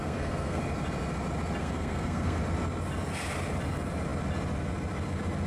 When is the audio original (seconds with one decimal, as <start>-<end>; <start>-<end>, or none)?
0.6-1.6; 2.4-5.5